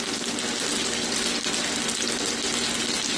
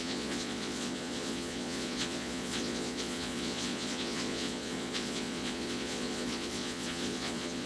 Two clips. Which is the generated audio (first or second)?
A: second